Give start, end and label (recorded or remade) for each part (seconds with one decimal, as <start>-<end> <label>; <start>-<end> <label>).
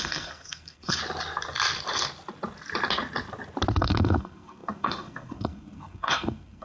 0.0-1.0 remade; 1.0-3.7 recorded; 3.7-6.6 remade